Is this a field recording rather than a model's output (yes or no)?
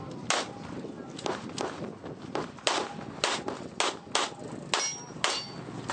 yes